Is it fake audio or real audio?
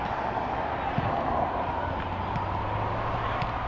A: real